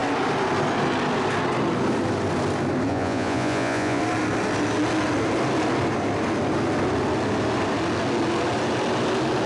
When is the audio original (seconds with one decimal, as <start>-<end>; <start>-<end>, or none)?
0.0-2.9; 4.0-9.5